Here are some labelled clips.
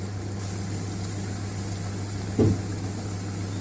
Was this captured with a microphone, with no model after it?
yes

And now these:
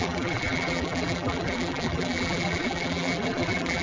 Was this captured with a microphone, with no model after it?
no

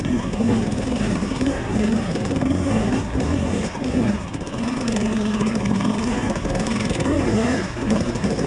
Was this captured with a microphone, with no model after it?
no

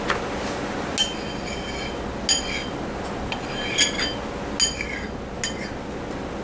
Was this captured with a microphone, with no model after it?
yes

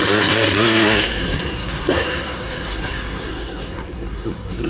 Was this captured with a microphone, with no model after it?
no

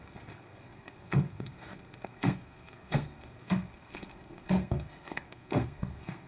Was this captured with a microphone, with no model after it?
no